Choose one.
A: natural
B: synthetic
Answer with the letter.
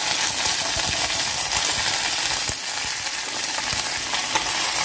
A